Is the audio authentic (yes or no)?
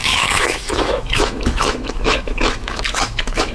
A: no